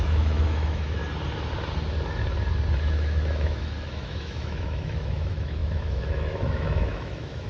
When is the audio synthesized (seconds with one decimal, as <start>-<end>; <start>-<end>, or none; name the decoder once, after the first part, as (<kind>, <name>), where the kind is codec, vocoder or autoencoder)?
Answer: 0.0-1.0 (autoencoder, DAC-VAE); 2.8-7.5